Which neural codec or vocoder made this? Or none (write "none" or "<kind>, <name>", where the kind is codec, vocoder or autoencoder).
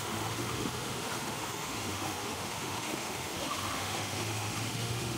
autoencoder, DAC-VAE